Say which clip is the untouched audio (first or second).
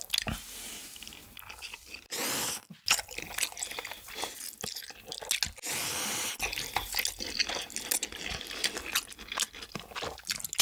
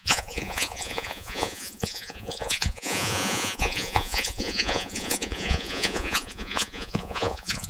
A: first